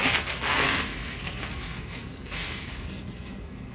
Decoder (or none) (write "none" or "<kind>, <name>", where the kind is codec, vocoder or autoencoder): codec, SNAC